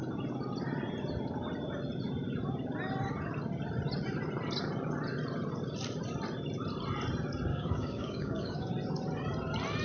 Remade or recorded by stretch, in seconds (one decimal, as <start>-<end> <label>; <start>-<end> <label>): 0.0-7.5 recorded; 7.5-8.7 remade; 8.7-9.8 recorded